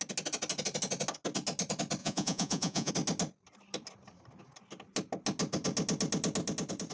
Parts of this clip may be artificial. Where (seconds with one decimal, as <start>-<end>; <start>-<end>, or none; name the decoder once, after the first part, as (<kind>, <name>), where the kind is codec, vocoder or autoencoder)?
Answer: 2.0-2.9 (vocoder, Vocos)